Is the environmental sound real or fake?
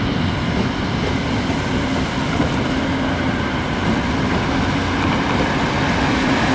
real